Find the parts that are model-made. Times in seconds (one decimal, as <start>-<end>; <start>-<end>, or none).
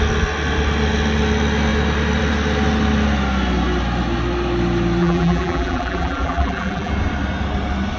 5.0-6.9